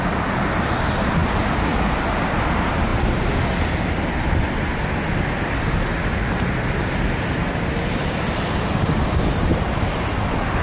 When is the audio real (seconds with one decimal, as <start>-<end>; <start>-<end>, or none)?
0.0-10.6